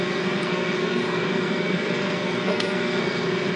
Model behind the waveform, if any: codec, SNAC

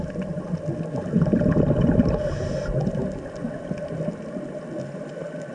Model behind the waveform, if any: none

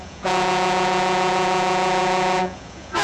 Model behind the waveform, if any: vocoder, Vocos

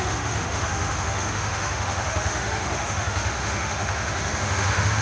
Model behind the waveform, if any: autoencoder, DAC-VAE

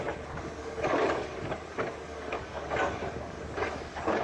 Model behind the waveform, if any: codec, DAC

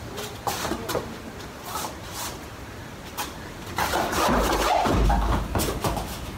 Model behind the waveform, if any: none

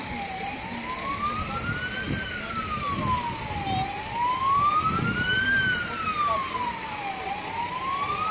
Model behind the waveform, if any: none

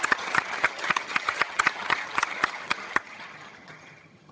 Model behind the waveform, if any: vocoder, HiFi-GAN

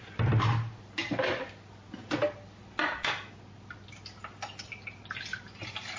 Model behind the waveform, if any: none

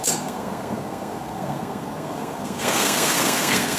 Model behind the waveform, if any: codec, SNAC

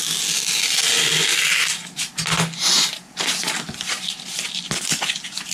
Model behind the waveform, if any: none